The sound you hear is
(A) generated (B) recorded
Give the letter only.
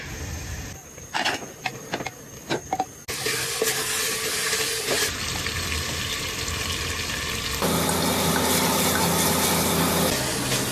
B